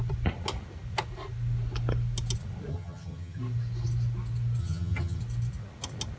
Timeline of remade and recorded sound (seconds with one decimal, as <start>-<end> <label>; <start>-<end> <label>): 0.0-2.7 recorded; 2.7-3.4 remade; 3.4-4.6 recorded; 4.6-5.2 remade; 5.2-6.2 recorded